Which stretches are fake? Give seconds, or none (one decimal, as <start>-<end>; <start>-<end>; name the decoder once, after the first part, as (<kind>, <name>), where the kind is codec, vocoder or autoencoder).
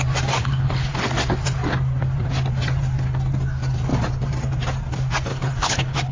0.4-0.9 (codec, HILCodec); 5.3-6.1